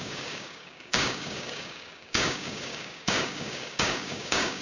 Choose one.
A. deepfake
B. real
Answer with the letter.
A